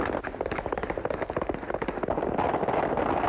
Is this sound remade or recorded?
recorded